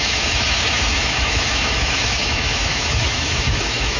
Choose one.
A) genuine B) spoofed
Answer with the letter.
B